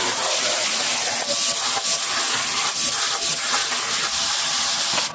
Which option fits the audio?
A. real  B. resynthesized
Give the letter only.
A